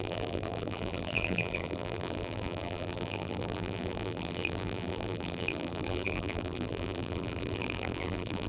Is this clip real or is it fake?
fake